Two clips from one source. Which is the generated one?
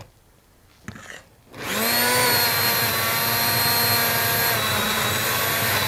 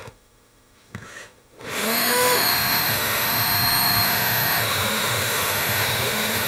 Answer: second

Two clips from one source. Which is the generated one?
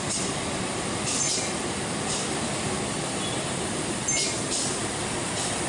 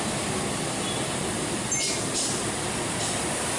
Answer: first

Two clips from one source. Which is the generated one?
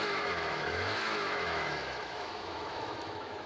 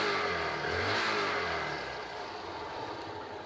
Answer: first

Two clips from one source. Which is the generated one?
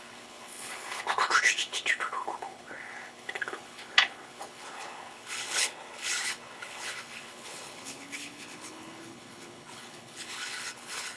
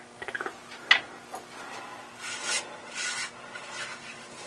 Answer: first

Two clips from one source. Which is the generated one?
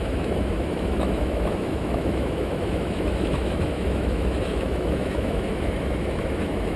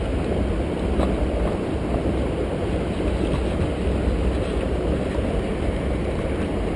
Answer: first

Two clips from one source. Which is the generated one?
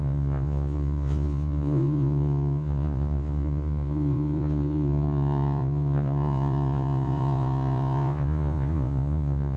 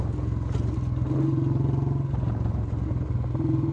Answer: first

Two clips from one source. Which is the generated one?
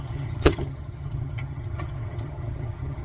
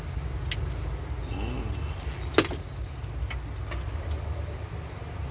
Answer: first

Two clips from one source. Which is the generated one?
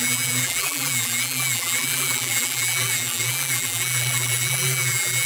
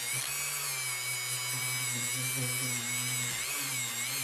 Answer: first